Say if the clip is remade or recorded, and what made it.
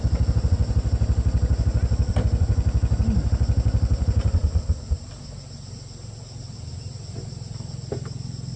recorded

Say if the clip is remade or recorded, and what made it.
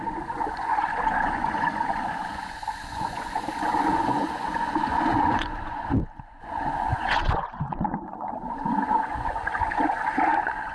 remade, vocoder, Vocos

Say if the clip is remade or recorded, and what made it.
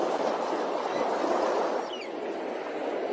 recorded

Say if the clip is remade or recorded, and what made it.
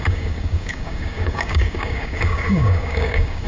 remade, codec, DAC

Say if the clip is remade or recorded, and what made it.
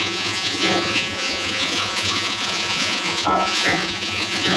remade, vocoder, Vocos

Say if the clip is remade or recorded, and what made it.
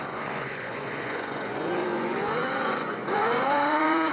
remade, vocoder, Vocos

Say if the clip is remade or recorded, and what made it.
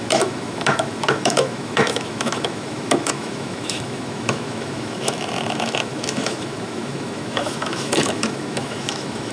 remade, autoencoder, DAC-VAE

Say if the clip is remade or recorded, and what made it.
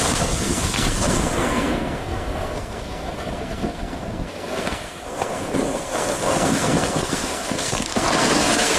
remade, codec, SNAC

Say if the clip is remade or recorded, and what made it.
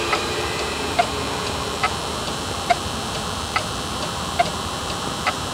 remade, vocoder, BigVGAN v2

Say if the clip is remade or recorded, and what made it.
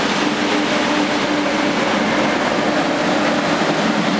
recorded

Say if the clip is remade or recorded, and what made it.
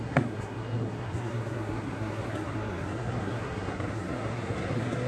remade, codec, SNAC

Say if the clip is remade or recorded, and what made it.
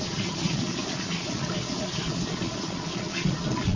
remade, vocoder, Vocos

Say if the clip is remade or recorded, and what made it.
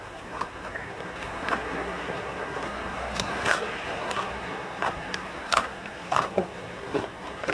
remade, codec, SNAC